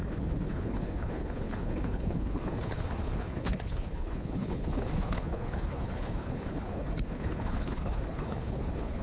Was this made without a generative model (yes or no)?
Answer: no